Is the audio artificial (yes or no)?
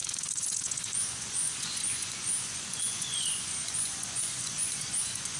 yes